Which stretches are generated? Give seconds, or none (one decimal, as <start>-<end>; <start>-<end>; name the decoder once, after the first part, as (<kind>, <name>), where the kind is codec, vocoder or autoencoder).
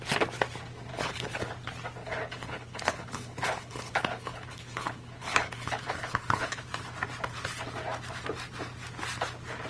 0.9-1.5 (codec, HILCodec); 2.0-6.6